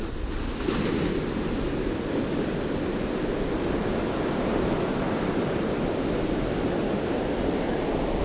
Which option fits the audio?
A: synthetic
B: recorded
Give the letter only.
B